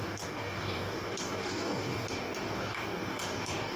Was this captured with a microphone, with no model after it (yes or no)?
no